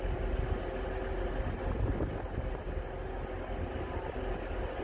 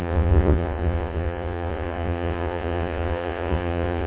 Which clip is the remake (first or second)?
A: second